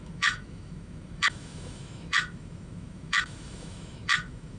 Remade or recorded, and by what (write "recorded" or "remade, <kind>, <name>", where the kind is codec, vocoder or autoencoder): remade, autoencoder, DAC-VAE